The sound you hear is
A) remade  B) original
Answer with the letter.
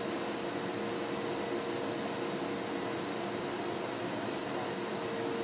B